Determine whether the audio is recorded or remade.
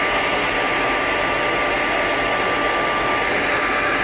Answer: recorded